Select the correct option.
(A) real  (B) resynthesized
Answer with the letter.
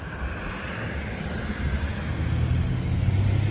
A